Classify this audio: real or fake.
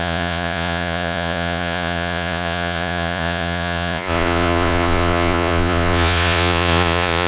fake